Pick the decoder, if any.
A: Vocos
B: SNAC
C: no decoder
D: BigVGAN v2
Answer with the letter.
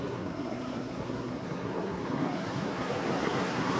B